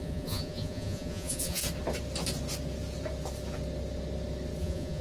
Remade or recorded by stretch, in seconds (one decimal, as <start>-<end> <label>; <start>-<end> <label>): 0.0-1.6 remade; 1.6-4.6 recorded; 4.6-5.0 remade